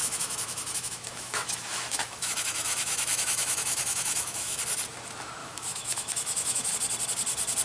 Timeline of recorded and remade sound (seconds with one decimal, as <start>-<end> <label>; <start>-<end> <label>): 0.0-4.6 remade; 4.6-5.4 recorded; 5.4-6.7 remade; 6.7-7.6 recorded